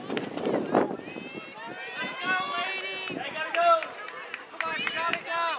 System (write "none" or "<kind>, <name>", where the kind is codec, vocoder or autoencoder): none